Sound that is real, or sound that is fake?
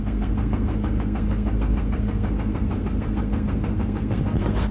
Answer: fake